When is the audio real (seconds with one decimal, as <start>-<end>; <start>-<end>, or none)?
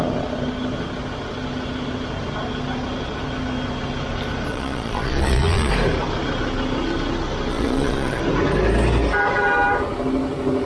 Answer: 0.0-4.5; 5.7-7.5; 8.2-10.7